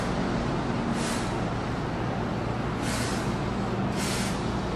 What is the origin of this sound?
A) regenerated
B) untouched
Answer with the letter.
B